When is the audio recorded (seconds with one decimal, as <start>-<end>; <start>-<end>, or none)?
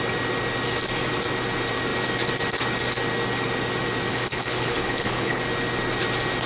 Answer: 0.0-4.1; 5.4-6.5